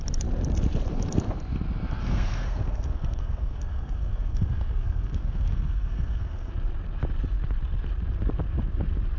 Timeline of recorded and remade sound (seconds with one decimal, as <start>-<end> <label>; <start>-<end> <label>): 0.0-2.0 recorded; 2.0-6.5 remade; 6.5-9.2 recorded